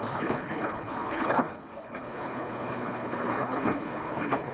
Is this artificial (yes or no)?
yes